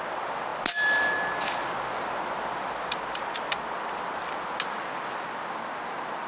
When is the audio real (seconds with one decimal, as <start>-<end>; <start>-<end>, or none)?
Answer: 0.0-6.3